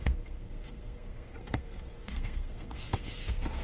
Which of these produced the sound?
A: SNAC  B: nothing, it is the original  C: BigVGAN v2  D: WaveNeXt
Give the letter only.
A